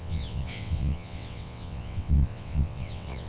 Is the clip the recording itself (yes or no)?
no